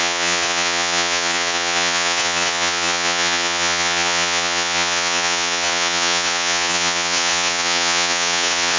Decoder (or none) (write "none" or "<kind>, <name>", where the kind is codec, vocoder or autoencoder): vocoder, Vocos